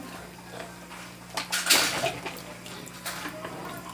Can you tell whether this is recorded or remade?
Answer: recorded